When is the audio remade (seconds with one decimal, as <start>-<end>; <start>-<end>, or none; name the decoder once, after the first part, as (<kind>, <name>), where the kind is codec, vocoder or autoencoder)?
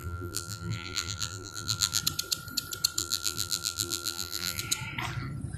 0.0-2.0 (vocoder, BigVGAN v2); 3.0-4.6